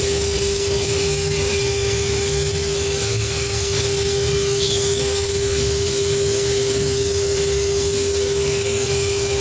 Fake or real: fake